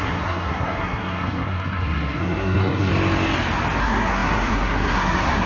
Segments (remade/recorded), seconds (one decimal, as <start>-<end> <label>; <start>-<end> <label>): 0.0-2.9 remade; 2.9-3.8 recorded; 3.8-5.5 remade